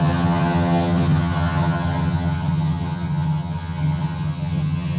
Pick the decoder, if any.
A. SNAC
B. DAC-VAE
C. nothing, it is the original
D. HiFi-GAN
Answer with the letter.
D